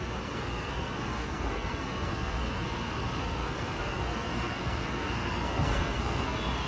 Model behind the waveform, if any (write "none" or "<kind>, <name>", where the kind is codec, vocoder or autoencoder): codec, SNAC